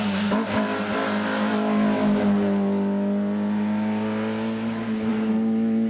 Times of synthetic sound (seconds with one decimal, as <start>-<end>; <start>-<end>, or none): none

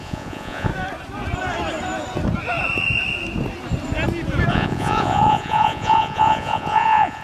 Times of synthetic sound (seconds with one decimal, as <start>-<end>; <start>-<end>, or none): 0.0-0.7; 4.5-7.2

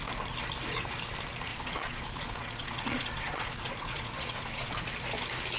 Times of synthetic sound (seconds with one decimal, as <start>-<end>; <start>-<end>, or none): 1.5-4.8

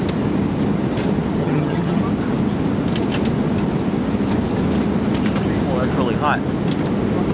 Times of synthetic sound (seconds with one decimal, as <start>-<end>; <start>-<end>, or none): 1.4-2.0

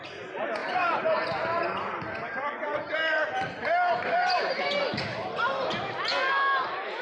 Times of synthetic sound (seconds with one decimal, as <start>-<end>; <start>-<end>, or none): 0.6-1.6; 2.6-4.8

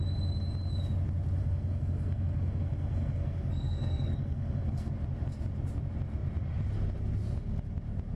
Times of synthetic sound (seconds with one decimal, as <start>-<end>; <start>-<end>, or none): 1.4-4.9